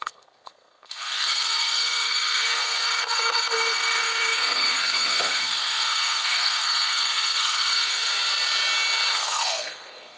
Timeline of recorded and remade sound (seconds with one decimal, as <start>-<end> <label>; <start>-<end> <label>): 0.0-8.1 remade; 8.1-9.1 recorded; 9.1-10.2 remade